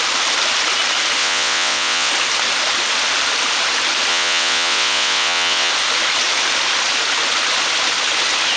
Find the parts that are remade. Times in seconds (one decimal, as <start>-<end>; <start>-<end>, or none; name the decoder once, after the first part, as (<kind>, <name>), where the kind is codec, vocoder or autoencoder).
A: 1.2-2.1 (vocoder, WaveNeXt); 4.1-5.7